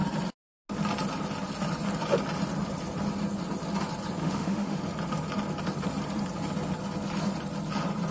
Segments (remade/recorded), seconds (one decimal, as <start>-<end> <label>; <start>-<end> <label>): 0.0-4.2 recorded; 4.2-4.8 remade; 4.8-8.1 recorded